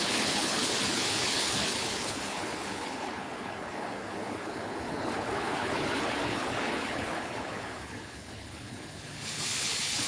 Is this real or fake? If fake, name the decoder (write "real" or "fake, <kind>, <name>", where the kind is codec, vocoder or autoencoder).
fake, codec, HILCodec